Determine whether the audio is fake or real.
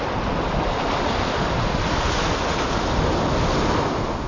real